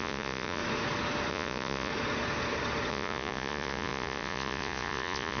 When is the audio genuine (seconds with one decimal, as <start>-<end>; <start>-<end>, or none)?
0.6-1.3; 1.9-2.9